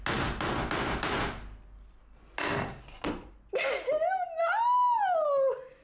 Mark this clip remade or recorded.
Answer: recorded